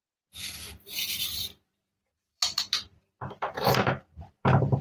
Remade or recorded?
remade